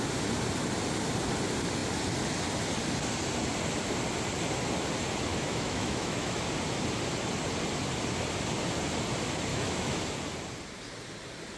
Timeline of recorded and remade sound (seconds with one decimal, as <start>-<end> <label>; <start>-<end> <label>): 0.0-5.3 recorded; 5.3-6.4 remade; 6.4-9.5 recorded; 9.5-10.0 remade; 10.0-11.6 recorded